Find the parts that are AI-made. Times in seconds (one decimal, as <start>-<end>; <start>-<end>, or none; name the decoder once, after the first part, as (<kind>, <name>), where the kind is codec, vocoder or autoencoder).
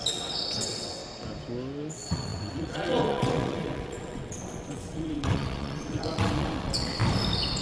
0.0-1.0 (vocoder, WaveNeXt); 1.9-7.0